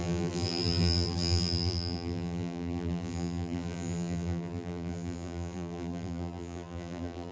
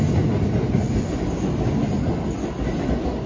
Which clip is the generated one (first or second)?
first